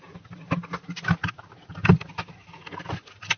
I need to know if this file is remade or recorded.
recorded